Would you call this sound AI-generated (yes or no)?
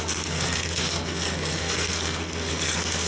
yes